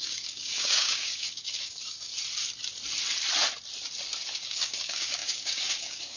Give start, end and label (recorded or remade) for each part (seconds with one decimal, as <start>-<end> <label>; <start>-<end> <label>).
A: 0.0-2.1 remade; 2.1-4.3 recorded; 4.3-6.2 remade